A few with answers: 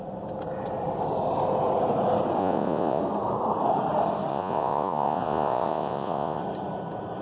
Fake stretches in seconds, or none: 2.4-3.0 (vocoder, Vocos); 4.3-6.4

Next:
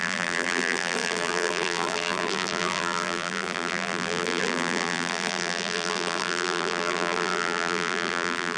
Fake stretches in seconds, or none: 0.0-8.6 (vocoder, BigVGAN v2)

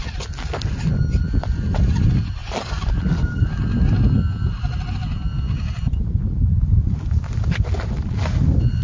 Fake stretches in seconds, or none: none

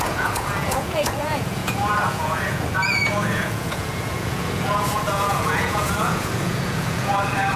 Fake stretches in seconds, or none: 0.0-7.6 (vocoder, Vocos)

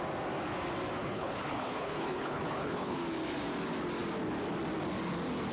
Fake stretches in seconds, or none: 1.0-3.0 (codec, HILCodec)

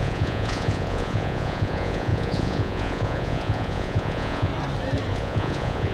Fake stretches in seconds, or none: 0.0-4.5 (vocoder, Vocos); 5.1-5.9

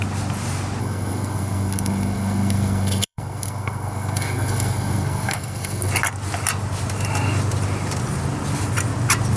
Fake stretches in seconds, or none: 0.8-5.9 (codec, SNAC)

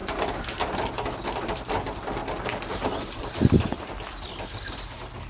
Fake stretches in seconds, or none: none